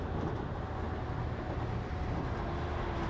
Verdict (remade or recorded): recorded